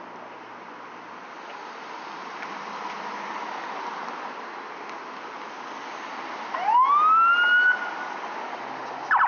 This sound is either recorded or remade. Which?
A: recorded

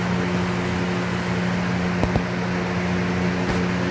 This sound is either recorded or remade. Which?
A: recorded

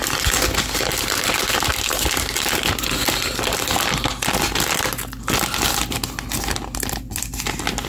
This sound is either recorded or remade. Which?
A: recorded